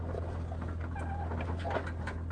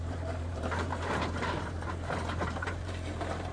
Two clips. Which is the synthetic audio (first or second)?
second